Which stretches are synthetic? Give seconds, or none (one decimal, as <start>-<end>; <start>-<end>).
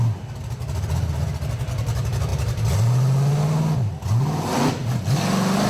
none